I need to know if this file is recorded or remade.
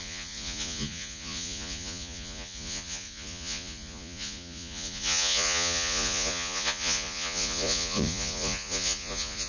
remade